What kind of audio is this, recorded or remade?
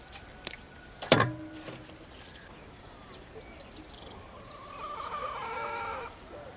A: remade